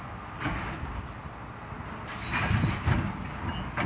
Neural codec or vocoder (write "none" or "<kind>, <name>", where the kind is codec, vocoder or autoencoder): none